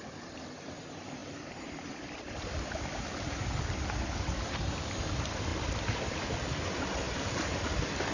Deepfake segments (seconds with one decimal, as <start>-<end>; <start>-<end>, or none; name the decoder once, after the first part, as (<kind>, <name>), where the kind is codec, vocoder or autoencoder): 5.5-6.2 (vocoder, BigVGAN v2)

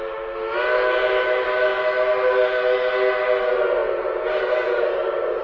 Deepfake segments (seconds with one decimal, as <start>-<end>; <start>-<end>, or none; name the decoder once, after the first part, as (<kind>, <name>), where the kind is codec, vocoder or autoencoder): none

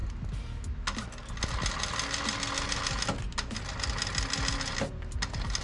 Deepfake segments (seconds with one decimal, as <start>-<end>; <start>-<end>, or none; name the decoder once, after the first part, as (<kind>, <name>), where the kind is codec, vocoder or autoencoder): none